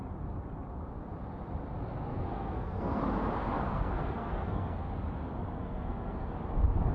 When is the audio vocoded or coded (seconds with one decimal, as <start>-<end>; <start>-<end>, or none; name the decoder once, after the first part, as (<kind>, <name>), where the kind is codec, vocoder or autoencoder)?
2.1-3.0 (codec, SNAC); 3.4-4.9; 5.6-6.3